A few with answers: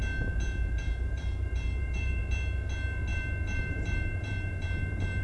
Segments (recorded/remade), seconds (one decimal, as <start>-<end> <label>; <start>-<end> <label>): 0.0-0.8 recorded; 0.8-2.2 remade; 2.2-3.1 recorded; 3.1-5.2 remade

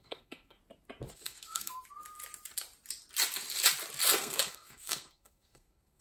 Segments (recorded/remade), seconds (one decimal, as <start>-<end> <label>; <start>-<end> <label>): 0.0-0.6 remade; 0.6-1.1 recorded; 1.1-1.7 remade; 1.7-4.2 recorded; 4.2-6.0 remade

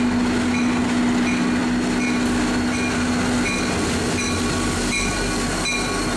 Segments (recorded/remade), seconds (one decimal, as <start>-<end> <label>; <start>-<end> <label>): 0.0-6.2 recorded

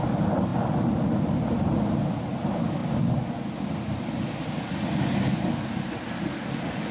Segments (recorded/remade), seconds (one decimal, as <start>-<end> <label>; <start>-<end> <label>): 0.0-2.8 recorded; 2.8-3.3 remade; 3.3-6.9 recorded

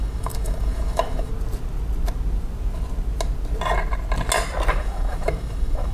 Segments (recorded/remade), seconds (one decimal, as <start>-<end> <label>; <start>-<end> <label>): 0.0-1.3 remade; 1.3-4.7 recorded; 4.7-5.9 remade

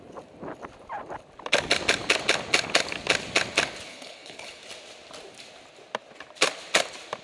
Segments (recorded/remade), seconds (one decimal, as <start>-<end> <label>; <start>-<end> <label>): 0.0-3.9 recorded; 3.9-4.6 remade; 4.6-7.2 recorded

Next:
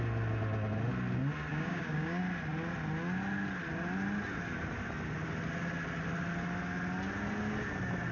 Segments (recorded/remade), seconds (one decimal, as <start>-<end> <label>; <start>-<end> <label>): 0.0-1.5 recorded; 1.5-2.2 remade; 2.2-8.1 recorded

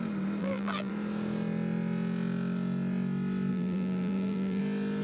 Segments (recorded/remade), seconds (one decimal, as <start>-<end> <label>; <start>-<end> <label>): 0.0-0.4 recorded; 0.4-0.9 remade; 0.9-3.5 recorded; 3.5-4.6 remade; 4.6-5.0 recorded